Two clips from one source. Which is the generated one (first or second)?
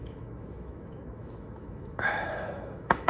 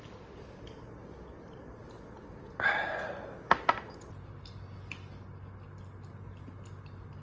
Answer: first